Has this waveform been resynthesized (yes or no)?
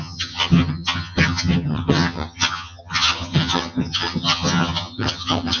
yes